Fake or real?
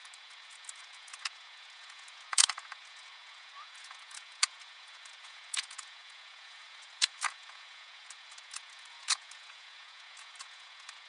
fake